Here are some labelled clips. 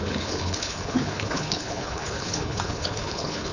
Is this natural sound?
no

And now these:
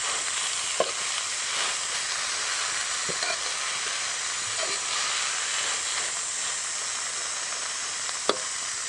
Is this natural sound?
yes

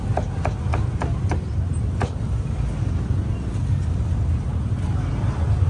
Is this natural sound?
yes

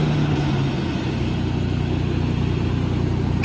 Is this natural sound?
yes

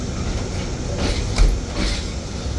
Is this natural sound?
yes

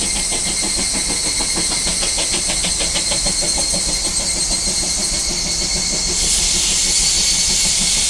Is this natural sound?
yes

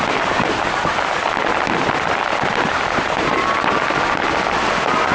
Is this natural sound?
yes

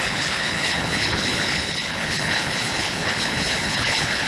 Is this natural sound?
no